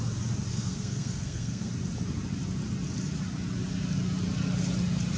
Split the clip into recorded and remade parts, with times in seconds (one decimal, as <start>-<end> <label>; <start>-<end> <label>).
0.0-0.5 recorded; 0.5-1.7 remade; 1.7-5.2 recorded